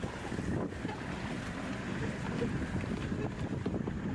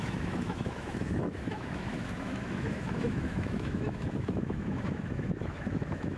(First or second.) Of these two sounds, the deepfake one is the second